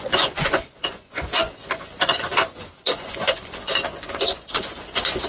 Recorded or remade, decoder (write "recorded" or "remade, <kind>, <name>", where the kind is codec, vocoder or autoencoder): remade, vocoder, Vocos